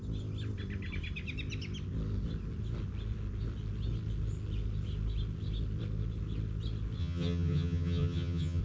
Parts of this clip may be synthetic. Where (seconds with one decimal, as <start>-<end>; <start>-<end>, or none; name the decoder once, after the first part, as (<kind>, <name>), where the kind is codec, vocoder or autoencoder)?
7.0-8.6 (vocoder, HiFi-GAN)